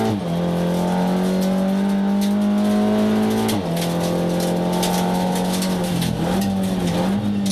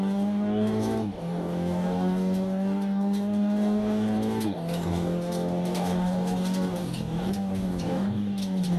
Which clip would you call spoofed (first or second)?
second